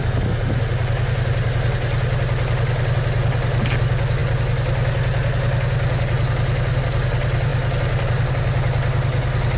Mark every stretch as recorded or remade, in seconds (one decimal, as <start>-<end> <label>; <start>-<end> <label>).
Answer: 0.0-9.6 recorded